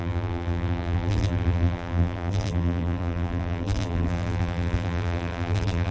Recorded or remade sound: remade